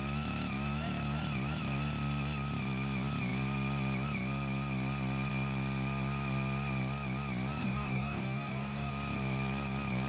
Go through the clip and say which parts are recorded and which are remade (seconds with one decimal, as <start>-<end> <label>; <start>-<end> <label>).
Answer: 0.0-7.6 recorded; 7.6-8.9 remade; 8.9-10.1 recorded